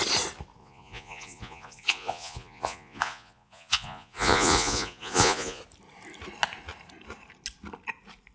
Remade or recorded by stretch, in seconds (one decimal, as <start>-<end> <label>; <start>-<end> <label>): 0.0-0.6 recorded; 0.6-5.6 remade; 5.6-8.3 recorded